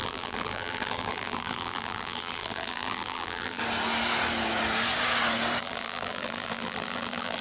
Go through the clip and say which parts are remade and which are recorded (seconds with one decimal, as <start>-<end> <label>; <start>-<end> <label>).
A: 0.0-3.6 remade; 3.6-5.6 recorded; 5.6-7.4 remade